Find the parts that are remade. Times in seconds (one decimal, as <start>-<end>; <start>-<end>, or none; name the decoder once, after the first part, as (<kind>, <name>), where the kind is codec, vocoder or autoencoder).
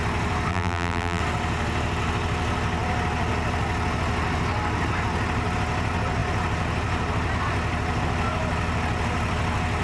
0.5-1.2 (vocoder, BigVGAN v2)